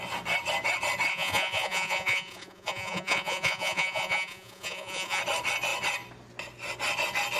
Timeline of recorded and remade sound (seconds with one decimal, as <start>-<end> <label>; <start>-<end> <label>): 0.0-1.1 recorded; 1.1-5.2 remade; 5.2-7.4 recorded